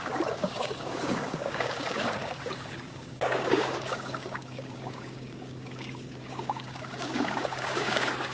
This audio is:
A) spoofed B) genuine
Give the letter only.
A